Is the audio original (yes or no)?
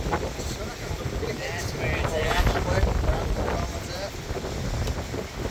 yes